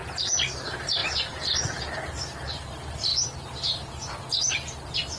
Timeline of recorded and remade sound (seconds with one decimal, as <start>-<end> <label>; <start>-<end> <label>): 0.0-5.2 recorded